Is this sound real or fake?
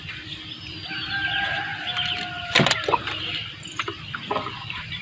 real